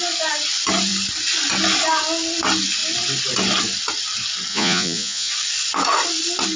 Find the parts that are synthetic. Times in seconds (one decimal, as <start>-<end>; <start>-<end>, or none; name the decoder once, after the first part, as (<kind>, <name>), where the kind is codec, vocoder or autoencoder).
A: 4.5-5.3 (vocoder, Vocos)